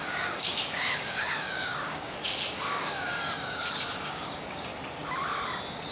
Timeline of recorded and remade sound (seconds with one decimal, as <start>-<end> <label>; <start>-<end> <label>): 0.0-4.7 remade; 4.7-5.9 recorded